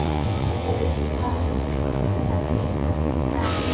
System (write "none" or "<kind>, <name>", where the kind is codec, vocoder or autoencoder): vocoder, WaveNeXt